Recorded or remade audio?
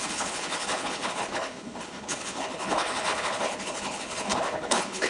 remade